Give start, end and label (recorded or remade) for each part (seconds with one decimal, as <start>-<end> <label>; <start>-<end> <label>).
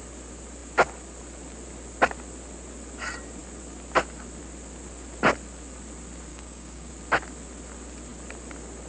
0.0-6.3 recorded; 6.3-6.9 remade; 6.9-8.9 recorded